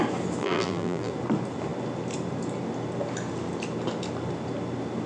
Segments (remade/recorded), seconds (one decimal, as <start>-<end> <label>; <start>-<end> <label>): 0.0-0.4 recorded; 0.4-1.1 remade; 1.1-5.1 recorded

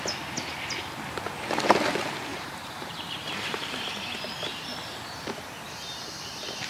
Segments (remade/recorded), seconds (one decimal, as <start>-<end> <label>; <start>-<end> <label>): 0.0-2.3 recorded; 2.3-4.1 remade; 4.1-6.7 recorded

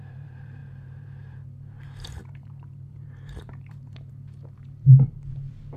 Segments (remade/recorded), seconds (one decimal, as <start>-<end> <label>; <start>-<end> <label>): 0.0-5.8 remade

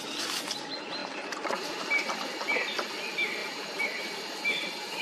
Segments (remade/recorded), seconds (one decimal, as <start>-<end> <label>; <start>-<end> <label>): 0.0-1.0 recorded; 1.0-3.0 remade; 3.0-3.4 recorded; 3.4-5.0 remade

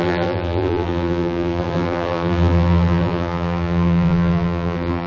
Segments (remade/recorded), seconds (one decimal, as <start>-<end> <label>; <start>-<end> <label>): 0.0-5.1 remade